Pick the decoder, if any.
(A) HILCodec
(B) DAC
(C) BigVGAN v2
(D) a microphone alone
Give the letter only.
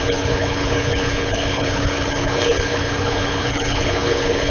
A